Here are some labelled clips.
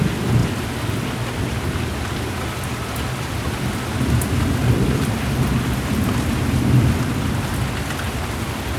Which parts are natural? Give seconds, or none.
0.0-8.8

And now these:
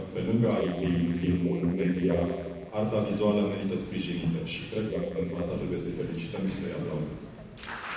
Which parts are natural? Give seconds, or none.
0.0-0.6; 2.7-4.9; 5.5-8.0